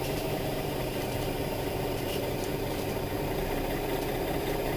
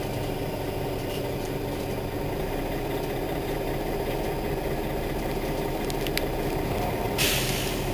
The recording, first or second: second